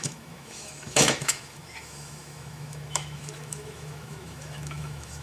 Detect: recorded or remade remade